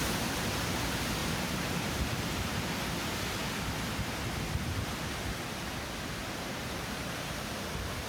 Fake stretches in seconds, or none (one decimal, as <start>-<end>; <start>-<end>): 1.2-2.5; 6.2-7.4

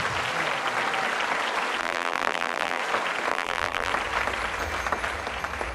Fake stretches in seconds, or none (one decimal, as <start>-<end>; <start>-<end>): 1.8-2.8; 3.3-3.9

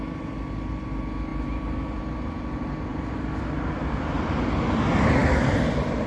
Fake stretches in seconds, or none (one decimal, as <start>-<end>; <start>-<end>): 5.2-6.1

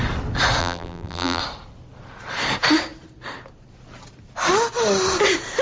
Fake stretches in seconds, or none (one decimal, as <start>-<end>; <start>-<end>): 0.6-1.4